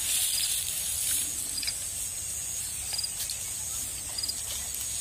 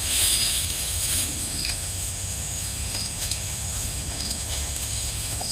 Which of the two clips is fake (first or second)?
second